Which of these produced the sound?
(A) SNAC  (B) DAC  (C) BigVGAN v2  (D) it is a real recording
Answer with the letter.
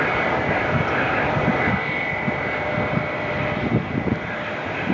C